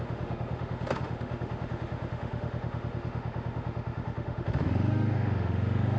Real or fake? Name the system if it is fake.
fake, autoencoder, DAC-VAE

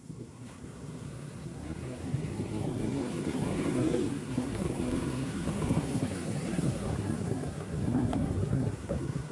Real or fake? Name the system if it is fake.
fake, codec, SNAC